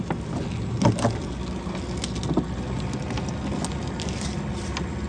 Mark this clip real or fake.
real